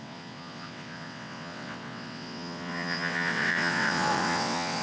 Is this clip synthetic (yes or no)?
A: yes